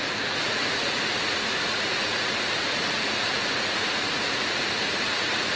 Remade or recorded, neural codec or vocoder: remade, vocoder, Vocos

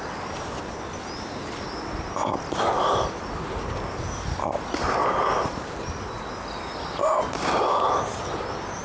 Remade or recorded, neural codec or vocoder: recorded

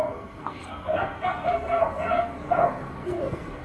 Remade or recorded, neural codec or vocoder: remade, codec, SNAC